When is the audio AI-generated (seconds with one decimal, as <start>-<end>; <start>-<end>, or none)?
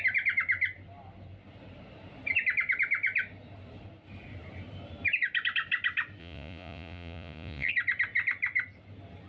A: 6.2-7.7